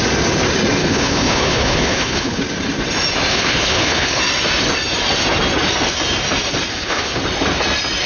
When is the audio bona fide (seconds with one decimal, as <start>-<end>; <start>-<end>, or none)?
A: 0.0-0.8; 2.4-3.3; 4.2-6.7; 7.2-8.1